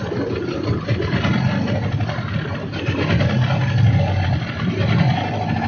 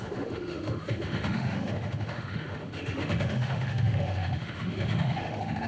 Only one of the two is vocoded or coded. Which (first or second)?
second